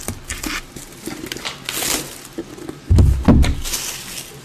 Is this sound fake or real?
real